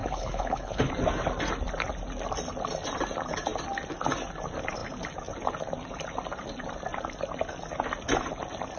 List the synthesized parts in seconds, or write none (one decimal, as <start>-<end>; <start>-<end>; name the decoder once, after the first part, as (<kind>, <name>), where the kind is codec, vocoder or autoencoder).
0.0-0.9 (codec, HILCodec)